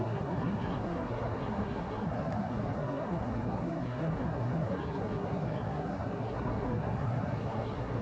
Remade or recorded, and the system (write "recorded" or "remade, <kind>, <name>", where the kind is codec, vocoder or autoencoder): remade, codec, SNAC